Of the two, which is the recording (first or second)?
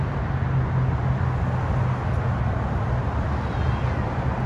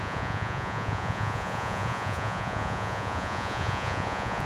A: first